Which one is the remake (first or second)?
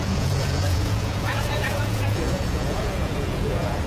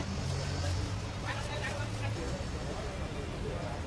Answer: first